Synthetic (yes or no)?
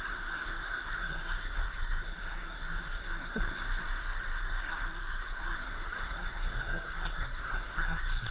yes